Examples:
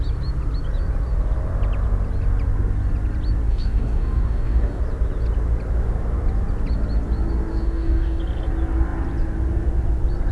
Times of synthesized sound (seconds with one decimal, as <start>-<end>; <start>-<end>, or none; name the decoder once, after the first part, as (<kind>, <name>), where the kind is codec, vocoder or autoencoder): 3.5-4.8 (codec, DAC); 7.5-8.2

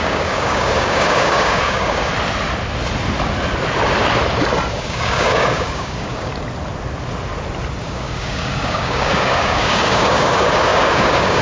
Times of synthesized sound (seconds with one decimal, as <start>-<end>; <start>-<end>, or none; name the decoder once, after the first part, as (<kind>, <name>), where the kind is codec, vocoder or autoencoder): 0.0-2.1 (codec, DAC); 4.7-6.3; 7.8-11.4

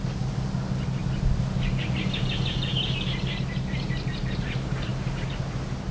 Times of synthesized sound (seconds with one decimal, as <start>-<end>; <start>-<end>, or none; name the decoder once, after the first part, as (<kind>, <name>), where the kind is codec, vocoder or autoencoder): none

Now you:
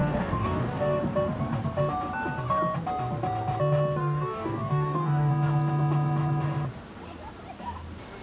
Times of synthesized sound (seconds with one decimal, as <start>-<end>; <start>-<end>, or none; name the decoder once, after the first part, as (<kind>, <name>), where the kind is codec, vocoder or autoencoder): 0.0-1.0 (codec, DAC); 4.0-5.3

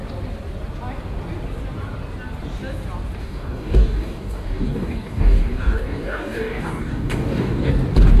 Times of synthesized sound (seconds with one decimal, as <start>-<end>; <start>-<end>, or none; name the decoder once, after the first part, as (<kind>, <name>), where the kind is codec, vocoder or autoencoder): 3.2-7.7 (codec, DAC)